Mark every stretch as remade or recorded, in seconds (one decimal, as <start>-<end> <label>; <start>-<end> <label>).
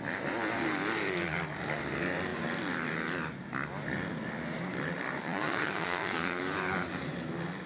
0.0-5.2 recorded; 5.2-6.4 remade; 6.4-7.7 recorded